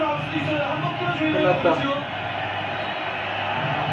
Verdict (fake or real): real